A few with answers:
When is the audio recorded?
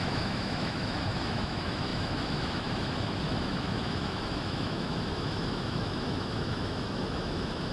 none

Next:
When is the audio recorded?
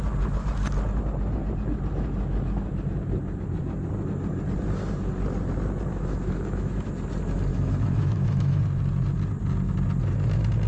0.0-5.9; 6.9-7.5; 8.6-10.7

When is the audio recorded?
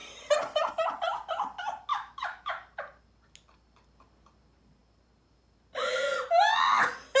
0.0-1.9; 2.5-7.2